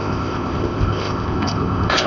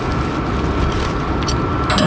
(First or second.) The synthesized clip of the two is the first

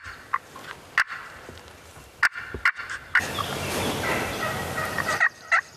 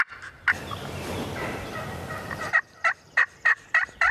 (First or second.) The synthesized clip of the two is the second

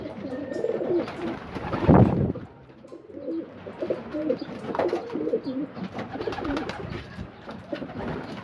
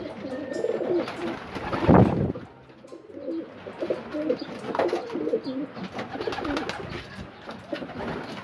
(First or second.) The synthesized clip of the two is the first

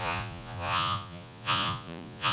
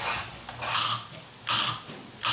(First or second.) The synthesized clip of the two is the first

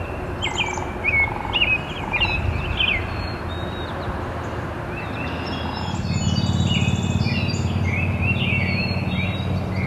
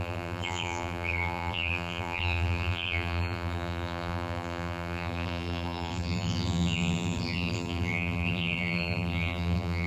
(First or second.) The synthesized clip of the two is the second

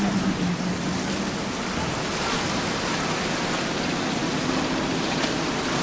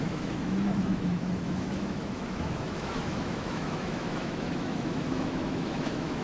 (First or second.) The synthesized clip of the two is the second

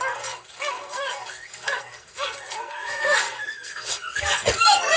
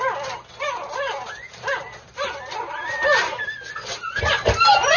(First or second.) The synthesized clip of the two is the first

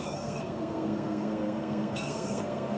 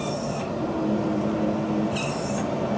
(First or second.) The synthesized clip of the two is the first